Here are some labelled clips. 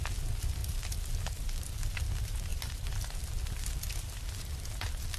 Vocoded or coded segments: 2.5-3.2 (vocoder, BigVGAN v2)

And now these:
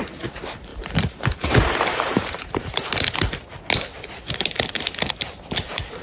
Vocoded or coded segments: 0.7-3.3 (vocoder, BigVGAN v2)

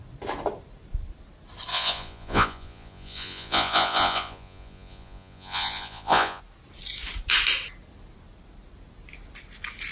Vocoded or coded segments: 1.7-6.4 (vocoder, Vocos)

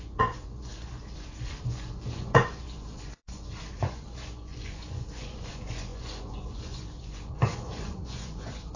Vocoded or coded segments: 0.0-8.8 (vocoder, Vocos)

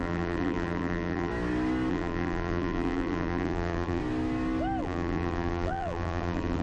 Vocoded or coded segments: 0.0-1.3 (vocoder, BigVGAN v2); 1.9-4.0; 4.8-6.6

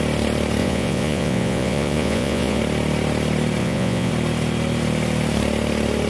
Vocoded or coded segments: 0.6-2.6 (vocoder, Vocos); 3.6-4.1

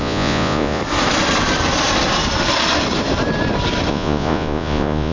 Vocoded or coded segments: 0.0-0.8 (vocoder, Vocos); 3.9-5.1